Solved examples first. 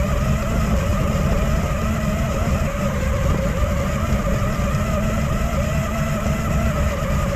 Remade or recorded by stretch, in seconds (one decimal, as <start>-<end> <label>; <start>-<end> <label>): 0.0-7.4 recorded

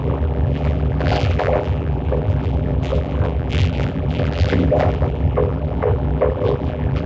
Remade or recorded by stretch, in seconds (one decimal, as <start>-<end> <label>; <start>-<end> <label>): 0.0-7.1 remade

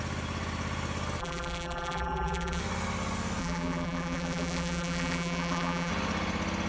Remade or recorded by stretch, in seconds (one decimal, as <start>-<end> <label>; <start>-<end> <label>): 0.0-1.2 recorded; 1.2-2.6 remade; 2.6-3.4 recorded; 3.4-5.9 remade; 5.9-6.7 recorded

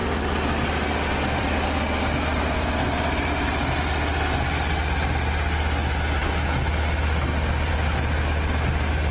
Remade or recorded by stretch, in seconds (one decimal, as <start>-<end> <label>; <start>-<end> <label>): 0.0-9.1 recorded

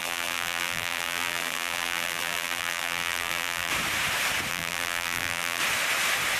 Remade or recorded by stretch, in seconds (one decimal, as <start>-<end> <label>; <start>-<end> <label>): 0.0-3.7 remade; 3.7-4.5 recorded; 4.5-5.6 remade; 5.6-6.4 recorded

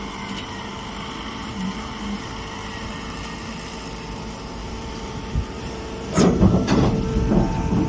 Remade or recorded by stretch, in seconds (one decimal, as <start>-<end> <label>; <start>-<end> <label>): 0.0-4.6 recorded; 4.6-6.8 remade; 6.8-7.9 recorded